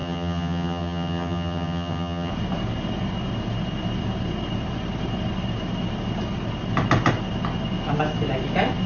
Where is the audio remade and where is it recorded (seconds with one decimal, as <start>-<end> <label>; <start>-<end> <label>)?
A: 0.0-2.3 remade; 2.3-8.9 recorded

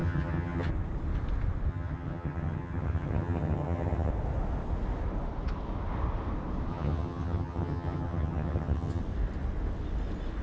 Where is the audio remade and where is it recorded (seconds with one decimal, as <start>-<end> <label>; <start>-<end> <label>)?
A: 0.0-0.7 remade; 0.7-1.7 recorded; 1.7-4.1 remade; 4.1-6.7 recorded; 6.7-9.0 remade; 9.0-10.4 recorded